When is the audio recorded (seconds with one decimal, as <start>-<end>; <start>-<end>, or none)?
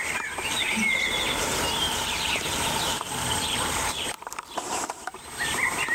0.0-1.5; 5.0-5.9